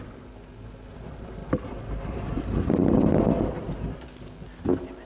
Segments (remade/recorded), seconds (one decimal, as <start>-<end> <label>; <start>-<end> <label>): 0.0-5.1 recorded

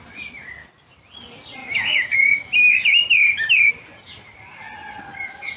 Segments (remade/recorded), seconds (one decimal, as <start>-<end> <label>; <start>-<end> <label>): 0.0-1.6 recorded; 1.6-3.7 remade; 3.7-5.6 recorded

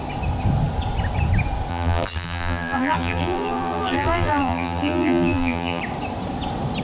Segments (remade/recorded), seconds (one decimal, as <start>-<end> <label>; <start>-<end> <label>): 0.0-1.7 recorded; 1.7-5.8 remade; 5.8-6.8 recorded

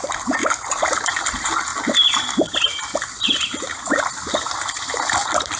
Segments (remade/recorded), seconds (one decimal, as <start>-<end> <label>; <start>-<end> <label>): 0.0-0.4 remade; 0.4-1.1 recorded; 1.1-1.7 remade; 1.7-2.7 recorded; 2.7-5.6 remade

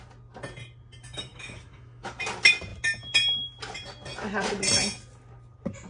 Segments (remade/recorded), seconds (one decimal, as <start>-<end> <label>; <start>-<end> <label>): 0.0-1.3 recorded; 1.3-2.2 remade; 2.2-5.9 recorded